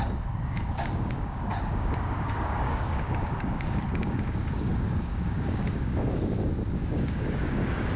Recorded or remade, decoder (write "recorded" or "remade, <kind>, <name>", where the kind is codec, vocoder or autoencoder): remade, codec, DAC